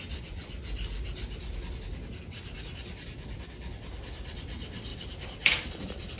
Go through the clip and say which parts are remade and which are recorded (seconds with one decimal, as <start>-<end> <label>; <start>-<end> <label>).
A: 0.0-4.9 recorded; 4.9-5.8 remade; 5.8-6.2 recorded